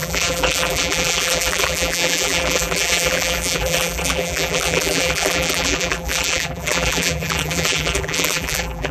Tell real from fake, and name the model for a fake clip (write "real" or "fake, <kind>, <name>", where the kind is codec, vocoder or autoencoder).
fake, vocoder, BigVGAN v2